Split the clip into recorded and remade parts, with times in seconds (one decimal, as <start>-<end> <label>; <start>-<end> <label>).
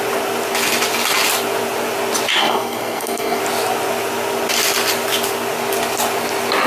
0.0-2.4 recorded; 2.4-3.4 remade; 3.4-6.7 recorded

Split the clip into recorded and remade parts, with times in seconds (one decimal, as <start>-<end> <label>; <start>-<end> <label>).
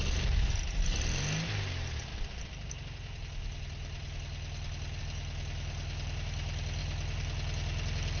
0.0-8.2 recorded